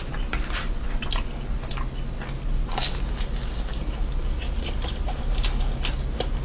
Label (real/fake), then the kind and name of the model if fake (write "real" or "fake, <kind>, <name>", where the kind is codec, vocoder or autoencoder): real